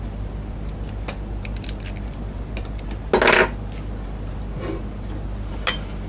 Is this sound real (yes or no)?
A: yes